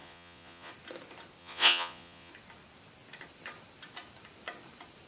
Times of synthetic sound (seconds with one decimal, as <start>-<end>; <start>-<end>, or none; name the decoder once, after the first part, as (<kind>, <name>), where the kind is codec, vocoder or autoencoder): 0.0-0.7 (vocoder, Vocos); 1.4-2.3

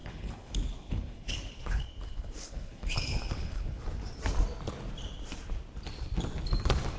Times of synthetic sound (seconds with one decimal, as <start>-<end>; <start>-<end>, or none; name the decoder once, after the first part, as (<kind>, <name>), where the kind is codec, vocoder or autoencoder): 0.0-3.8 (codec, HILCodec)

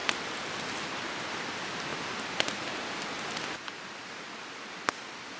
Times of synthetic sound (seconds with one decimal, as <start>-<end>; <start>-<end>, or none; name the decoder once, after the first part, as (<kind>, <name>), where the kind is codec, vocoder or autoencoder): none

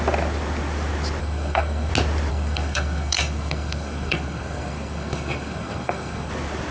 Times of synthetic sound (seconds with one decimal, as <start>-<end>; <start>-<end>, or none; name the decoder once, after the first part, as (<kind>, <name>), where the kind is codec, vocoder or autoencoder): 1.2-1.9 (codec, SNAC); 2.3-6.3

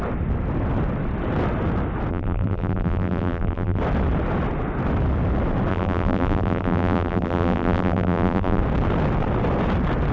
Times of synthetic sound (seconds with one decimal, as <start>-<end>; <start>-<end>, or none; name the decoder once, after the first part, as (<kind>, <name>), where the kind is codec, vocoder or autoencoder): 2.1-3.8 (vocoder, BigVGAN v2); 5.7-8.6

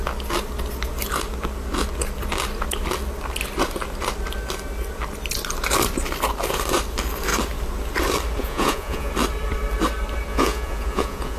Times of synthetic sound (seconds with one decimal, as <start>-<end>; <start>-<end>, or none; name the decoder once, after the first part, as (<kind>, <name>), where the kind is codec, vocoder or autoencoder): 8.4-9.1 (vocoder, Vocos); 10.3-11.4

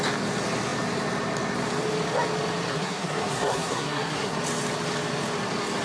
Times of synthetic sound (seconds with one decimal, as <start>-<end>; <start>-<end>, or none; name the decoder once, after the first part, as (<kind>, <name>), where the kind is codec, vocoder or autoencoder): 2.7-4.4 (codec, SNAC)

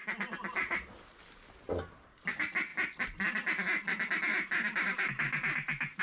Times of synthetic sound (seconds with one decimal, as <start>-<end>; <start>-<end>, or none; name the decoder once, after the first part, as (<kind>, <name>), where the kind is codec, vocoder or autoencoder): 0.0-2.3 (vocoder, BigVGAN v2); 4.3-6.0